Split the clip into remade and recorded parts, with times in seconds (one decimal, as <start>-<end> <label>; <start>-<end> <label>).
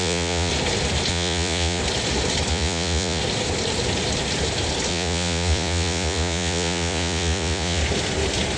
0.0-0.5 remade; 0.5-1.1 recorded; 1.1-1.8 remade; 1.8-2.5 recorded; 2.5-3.2 remade; 3.2-4.9 recorded; 4.9-7.8 remade; 7.8-8.6 recorded